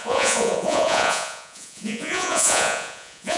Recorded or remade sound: remade